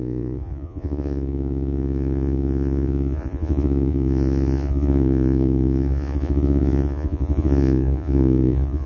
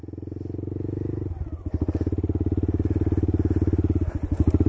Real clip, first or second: second